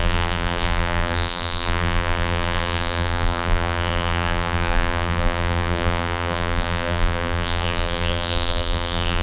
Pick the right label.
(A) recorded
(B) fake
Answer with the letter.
B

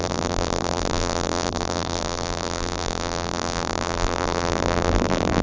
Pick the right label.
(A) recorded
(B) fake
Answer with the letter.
B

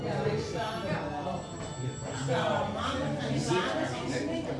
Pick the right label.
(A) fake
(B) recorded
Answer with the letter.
B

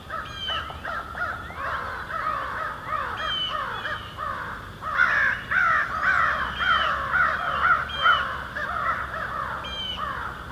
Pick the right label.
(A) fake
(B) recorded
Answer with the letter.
B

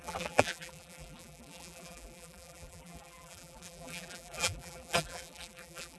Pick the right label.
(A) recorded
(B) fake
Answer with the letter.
B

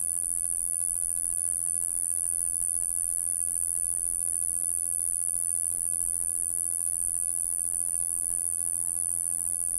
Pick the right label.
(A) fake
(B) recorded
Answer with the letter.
A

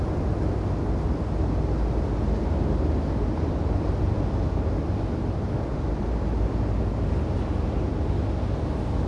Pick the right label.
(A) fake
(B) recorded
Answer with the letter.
B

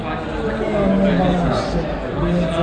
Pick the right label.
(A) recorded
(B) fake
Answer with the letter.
A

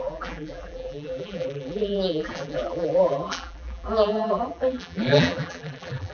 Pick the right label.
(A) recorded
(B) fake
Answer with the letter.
B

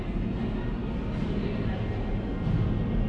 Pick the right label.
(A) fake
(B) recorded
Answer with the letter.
B